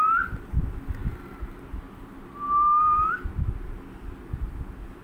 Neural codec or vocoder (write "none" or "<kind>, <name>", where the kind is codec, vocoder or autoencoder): none